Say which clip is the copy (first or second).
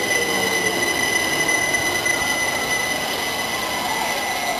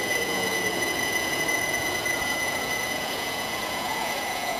second